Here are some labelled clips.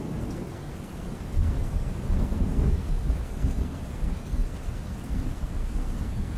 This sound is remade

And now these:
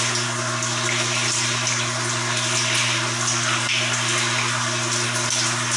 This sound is recorded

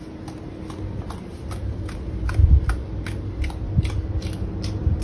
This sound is recorded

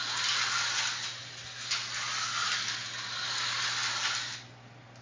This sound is recorded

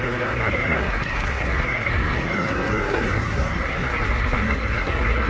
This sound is remade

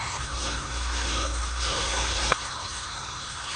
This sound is remade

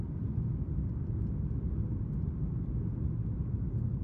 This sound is recorded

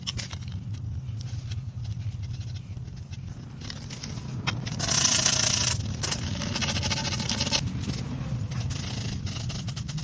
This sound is recorded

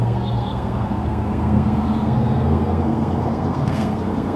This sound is remade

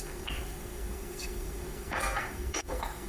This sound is remade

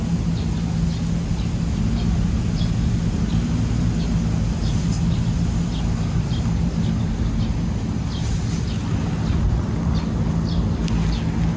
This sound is recorded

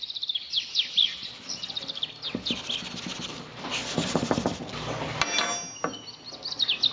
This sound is recorded